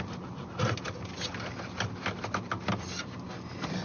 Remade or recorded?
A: recorded